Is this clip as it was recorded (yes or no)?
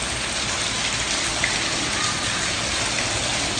yes